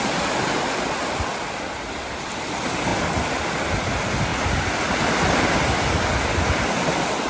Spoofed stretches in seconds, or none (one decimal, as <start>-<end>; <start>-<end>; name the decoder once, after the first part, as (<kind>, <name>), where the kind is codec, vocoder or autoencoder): none